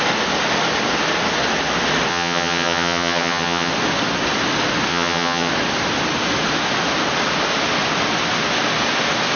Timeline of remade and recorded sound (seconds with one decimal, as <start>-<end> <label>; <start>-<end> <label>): 0.0-2.1 recorded; 2.1-3.7 remade; 3.7-4.9 recorded; 4.9-5.5 remade; 5.5-9.4 recorded